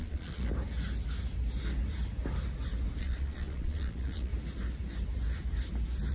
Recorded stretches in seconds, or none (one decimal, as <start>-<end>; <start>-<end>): 0.5-3.0; 4.3-6.1